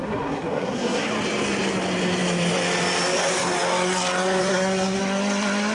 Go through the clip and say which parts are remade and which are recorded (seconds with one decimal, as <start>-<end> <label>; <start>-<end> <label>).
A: 0.0-1.1 remade; 1.1-4.4 recorded; 4.4-5.0 remade; 5.0-5.7 recorded